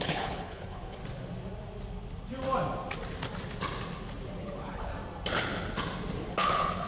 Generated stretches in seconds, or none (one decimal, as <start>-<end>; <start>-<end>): 0.0-1.0; 4.4-4.9; 6.3-6.9